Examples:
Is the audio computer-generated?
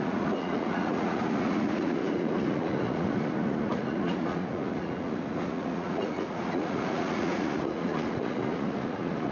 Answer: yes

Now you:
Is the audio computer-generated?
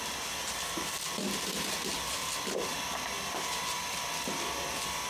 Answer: yes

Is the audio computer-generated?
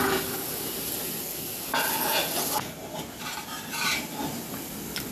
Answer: no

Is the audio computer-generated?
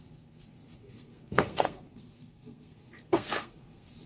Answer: yes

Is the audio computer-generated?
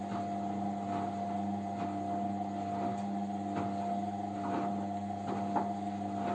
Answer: no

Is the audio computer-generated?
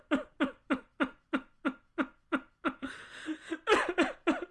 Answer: no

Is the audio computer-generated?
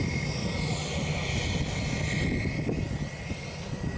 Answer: no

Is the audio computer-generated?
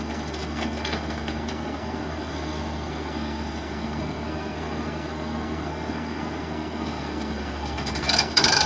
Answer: yes